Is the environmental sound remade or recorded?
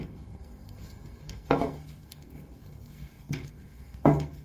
remade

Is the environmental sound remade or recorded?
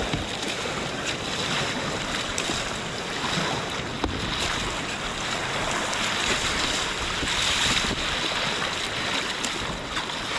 recorded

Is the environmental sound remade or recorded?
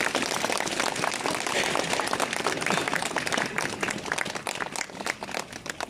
recorded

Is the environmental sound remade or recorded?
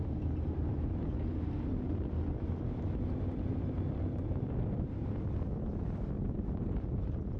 recorded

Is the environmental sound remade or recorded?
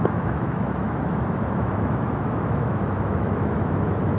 remade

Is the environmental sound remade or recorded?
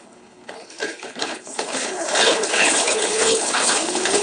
remade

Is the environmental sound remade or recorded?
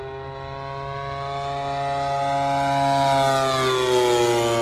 recorded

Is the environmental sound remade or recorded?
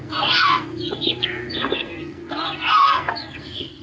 remade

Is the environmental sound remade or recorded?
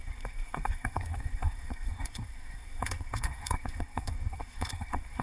remade